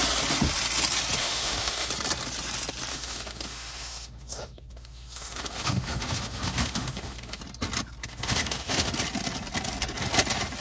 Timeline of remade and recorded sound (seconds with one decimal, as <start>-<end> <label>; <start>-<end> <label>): 0.0-1.2 recorded; 1.2-1.9 remade; 1.9-2.9 recorded; 2.9-7.4 remade; 7.4-8.0 recorded; 8.0-8.9 remade; 8.9-10.6 recorded

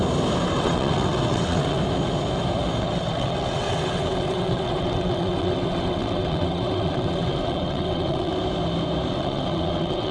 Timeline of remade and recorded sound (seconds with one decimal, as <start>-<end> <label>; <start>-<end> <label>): 0.0-0.5 recorded; 0.5-1.8 remade; 1.8-2.8 recorded; 2.8-8.3 remade; 8.3-9.1 recorded; 9.1-10.1 remade

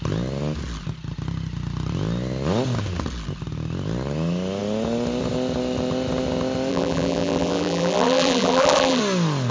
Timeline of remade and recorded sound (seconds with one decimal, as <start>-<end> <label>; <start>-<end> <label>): 0.0-6.7 recorded; 6.7-9.0 remade; 9.0-9.5 recorded

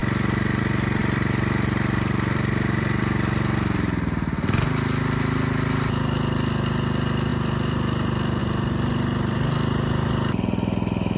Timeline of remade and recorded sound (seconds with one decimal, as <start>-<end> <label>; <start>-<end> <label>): 0.0-1.0 recorded; 1.0-3.0 remade; 3.0-7.3 recorded; 7.3-8.4 remade; 8.4-11.2 recorded